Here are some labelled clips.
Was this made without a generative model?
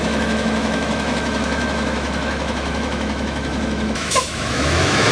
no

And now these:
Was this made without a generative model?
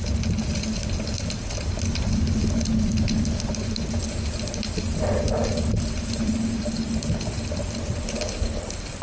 yes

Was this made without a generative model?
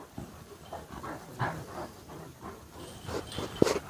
no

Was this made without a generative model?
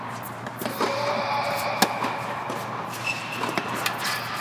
yes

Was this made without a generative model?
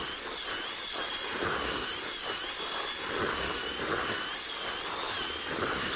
yes